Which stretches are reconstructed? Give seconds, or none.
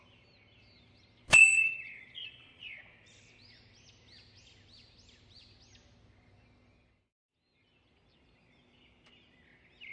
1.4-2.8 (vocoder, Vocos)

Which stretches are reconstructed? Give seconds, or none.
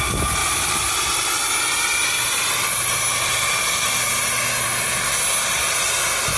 0.4-1.1 (vocoder, BigVGAN v2); 3.1-3.7